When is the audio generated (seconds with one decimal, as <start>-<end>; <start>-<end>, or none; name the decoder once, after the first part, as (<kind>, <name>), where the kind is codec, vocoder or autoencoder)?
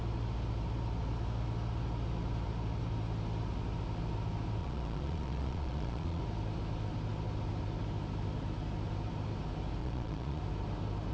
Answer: 4.6-6.2 (vocoder, Vocos); 9.8-10.4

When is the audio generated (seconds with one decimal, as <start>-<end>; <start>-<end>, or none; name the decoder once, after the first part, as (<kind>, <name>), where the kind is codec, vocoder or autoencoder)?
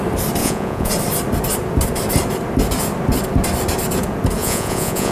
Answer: 0.4-0.9 (vocoder, Vocos); 4.4-5.1